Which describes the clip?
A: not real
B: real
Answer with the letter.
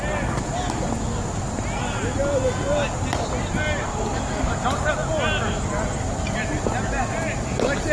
B